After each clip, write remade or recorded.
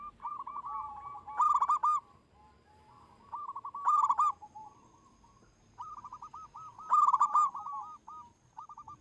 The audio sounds recorded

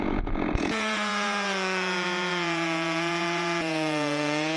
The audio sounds remade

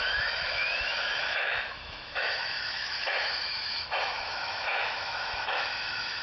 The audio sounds remade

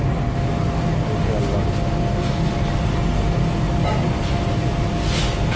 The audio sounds recorded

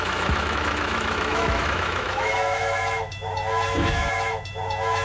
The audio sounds remade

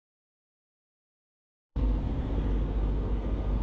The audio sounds remade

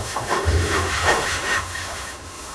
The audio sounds remade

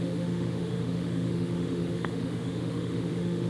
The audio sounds remade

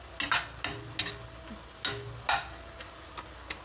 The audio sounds recorded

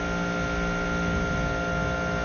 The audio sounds recorded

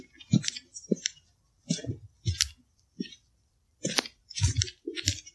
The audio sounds remade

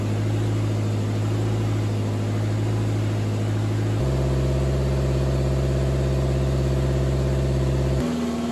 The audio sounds recorded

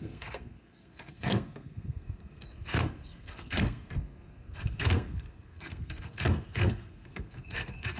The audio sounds remade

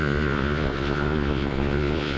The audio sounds remade